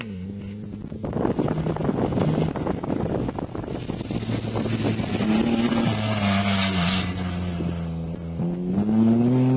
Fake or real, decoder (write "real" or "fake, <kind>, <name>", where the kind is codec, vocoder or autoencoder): real